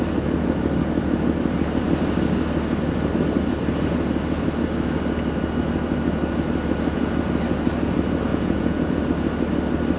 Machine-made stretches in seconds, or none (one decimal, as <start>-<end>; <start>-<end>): 8.3-9.0

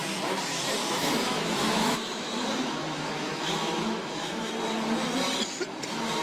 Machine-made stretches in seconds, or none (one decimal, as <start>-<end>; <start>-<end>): 0.8-4.5

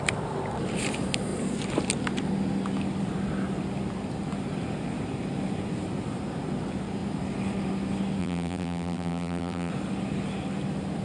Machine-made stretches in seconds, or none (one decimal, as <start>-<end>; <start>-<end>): 8.2-9.7

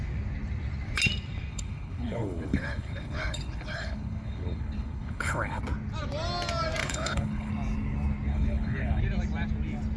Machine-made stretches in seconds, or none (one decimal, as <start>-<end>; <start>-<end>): 1.5-5.6; 6.8-7.5; 8.3-9.0